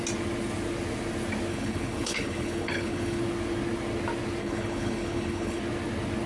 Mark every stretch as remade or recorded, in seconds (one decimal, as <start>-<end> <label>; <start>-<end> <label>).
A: 0.0-1.5 recorded; 1.5-3.2 remade; 3.2-4.4 recorded; 4.4-5.6 remade; 5.6-6.3 recorded